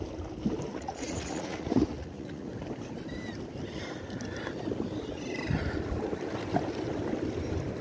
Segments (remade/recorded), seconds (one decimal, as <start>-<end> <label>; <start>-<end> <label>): 0.0-0.7 recorded; 0.7-2.5 remade; 2.5-7.8 recorded